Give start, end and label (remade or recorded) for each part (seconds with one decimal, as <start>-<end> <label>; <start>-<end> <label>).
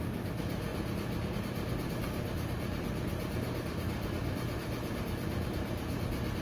0.0-6.4 recorded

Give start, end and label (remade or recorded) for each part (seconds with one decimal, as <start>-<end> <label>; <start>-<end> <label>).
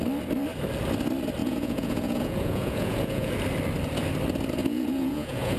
0.0-1.4 recorded; 1.4-3.3 remade; 3.3-4.6 recorded; 4.6-5.6 remade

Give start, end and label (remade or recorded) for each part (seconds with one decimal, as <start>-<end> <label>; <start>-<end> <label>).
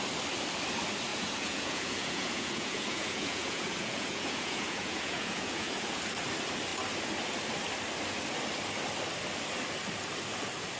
0.0-1.1 recorded; 1.1-6.0 remade; 6.0-10.8 recorded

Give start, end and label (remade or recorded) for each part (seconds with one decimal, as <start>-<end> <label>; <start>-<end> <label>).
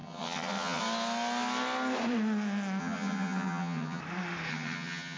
0.0-0.8 remade; 0.8-2.8 recorded; 2.8-4.0 remade; 4.0-4.5 recorded; 4.5-5.2 remade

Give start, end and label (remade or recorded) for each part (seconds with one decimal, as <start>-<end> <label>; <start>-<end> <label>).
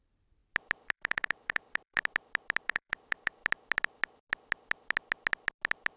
0.0-0.4 remade; 0.4-0.9 recorded; 0.9-2.0 remade; 2.0-2.6 recorded; 2.6-3.4 remade; 3.4-6.0 recorded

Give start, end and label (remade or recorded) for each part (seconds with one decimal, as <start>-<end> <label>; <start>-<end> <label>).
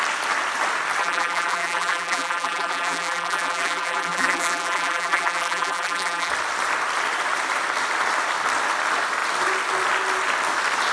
0.0-1.0 recorded; 1.0-6.3 remade; 6.3-10.9 recorded